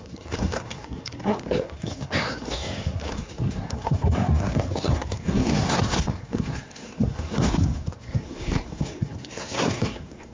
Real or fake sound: fake